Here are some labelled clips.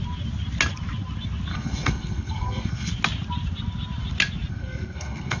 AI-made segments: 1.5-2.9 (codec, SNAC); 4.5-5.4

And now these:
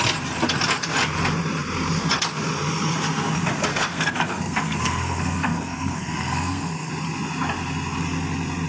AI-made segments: 3.7-6.9 (codec, SNAC)